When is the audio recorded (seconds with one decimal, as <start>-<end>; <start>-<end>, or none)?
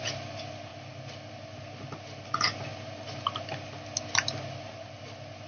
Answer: 0.0-0.7; 1.3-5.5